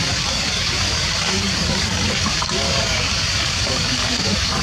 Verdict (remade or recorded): remade